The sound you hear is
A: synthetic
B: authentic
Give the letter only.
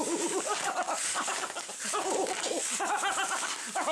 A